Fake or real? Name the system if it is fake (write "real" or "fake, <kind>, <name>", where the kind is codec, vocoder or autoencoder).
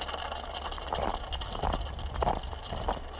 real